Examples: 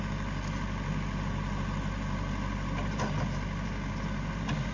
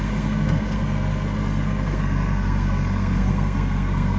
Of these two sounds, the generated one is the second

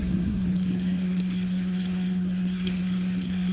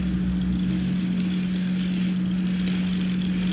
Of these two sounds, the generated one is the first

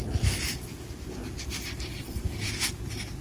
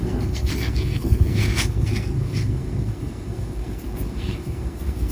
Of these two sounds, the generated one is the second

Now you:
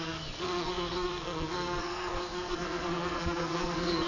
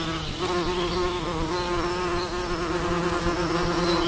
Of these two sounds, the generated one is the first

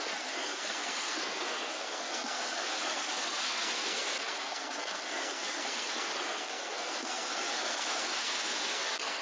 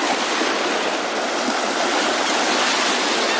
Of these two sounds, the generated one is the first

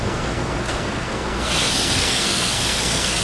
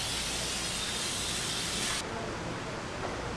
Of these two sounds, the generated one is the first